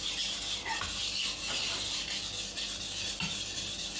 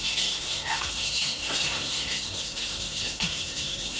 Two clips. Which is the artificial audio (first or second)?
second